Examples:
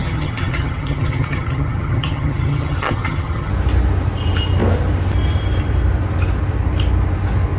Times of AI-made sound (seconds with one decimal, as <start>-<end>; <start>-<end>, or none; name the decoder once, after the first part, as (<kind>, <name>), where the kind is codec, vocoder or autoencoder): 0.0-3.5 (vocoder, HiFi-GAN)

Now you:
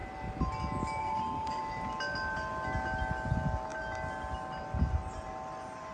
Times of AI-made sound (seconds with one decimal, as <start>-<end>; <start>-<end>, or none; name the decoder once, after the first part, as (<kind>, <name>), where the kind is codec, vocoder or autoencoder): 1.0-1.6 (codec, SNAC)

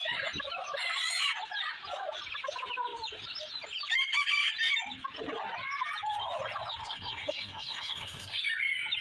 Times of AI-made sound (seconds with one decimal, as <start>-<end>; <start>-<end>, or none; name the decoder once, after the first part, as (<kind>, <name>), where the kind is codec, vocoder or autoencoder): 6.8-8.4 (codec, SNAC)

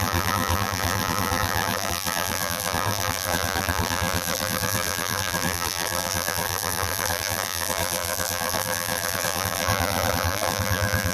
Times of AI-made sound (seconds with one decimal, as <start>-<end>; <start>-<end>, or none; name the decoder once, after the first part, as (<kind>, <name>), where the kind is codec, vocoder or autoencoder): 0.0-11.1 (vocoder, BigVGAN v2)

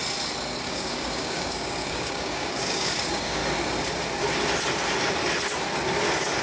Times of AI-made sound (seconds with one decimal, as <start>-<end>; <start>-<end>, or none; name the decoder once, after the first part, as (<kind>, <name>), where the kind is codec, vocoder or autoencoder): 0.6-3.4 (codec, DAC)

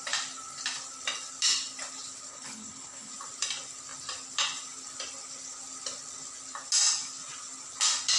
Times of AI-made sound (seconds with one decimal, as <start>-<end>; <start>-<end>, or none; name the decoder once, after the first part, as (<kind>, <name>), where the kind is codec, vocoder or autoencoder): 2.3-3.1 (codec, HILCodec)

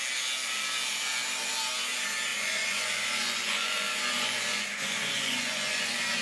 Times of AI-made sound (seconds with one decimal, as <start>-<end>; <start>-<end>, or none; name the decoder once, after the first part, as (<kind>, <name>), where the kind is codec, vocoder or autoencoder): 2.3-6.2 (vocoder, Vocos)

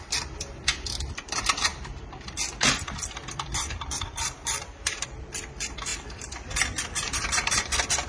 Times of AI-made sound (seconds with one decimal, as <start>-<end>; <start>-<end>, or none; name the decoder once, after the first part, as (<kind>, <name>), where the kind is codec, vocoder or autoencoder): 0.0-1.7 (vocoder, BigVGAN v2); 3.0-8.1